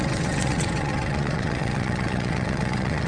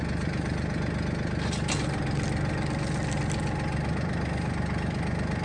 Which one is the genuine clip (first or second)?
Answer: second